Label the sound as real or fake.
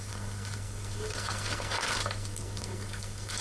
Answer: fake